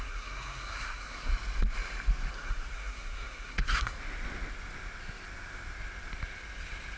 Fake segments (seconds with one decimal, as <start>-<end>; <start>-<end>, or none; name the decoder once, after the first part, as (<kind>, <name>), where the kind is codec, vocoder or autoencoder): 0.0-1.3 (codec, SNAC); 2.3-4.0